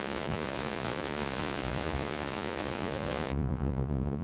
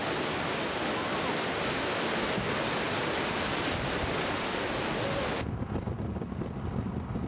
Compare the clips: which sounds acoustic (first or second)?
second